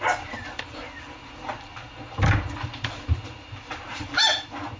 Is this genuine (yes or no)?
no